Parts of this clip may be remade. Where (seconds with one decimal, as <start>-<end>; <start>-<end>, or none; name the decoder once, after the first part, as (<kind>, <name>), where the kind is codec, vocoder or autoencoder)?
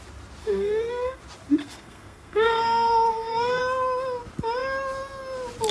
0.4-1.2 (codec, SNAC); 1.6-3.6